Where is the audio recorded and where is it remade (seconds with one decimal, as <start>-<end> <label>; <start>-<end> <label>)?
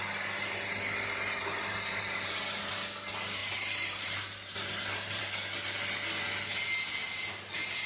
0.0-1.4 recorded; 1.4-2.7 remade; 2.7-3.4 recorded; 3.4-5.2 remade; 5.2-7.9 recorded